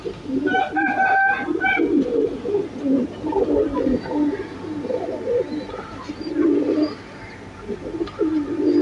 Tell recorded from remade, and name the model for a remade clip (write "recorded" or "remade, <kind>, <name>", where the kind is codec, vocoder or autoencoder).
recorded